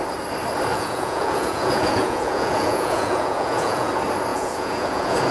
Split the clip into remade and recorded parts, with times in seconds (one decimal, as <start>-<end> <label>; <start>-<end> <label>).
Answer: 0.0-0.7 recorded; 0.7-3.9 remade; 3.9-4.3 recorded; 4.3-5.3 remade